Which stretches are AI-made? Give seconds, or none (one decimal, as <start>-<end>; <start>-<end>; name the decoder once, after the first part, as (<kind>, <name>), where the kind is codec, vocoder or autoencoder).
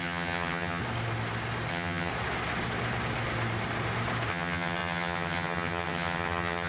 0.0-0.8 (vocoder, HiFi-GAN); 1.7-2.1; 4.3-6.7